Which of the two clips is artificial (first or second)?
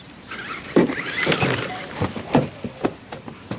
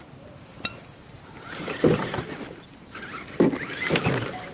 first